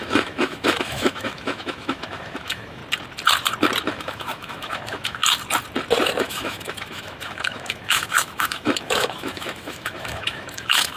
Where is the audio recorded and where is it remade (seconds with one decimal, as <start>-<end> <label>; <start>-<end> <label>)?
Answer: 0.0-2.8 remade; 2.8-3.9 recorded; 3.9-5.2 remade; 5.2-6.2 recorded; 6.2-11.0 remade